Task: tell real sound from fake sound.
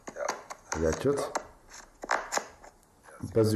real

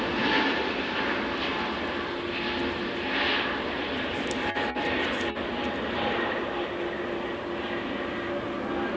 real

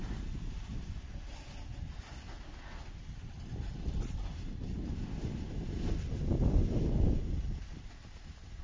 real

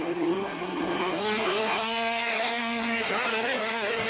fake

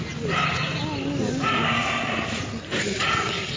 real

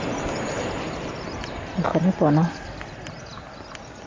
real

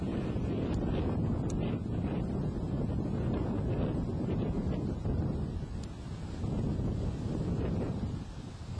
real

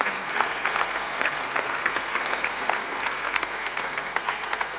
fake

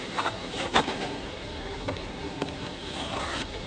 fake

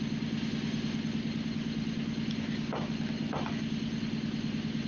real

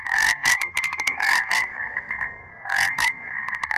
fake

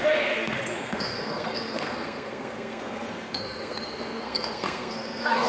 fake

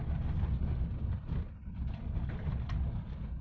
real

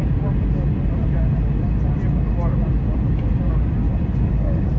real